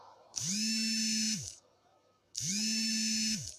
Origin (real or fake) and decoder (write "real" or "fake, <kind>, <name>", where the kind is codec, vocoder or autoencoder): fake, autoencoder, DAC-VAE